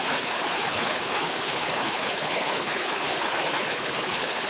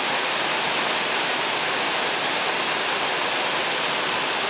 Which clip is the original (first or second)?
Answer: second